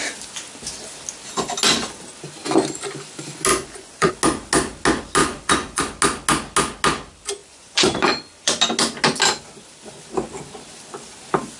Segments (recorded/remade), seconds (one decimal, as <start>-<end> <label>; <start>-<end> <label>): 0.0-3.5 recorded; 3.5-4.1 remade; 4.1-5.2 recorded; 5.2-5.8 remade; 5.8-7.4 recorded; 7.4-8.5 remade; 8.5-11.6 recorded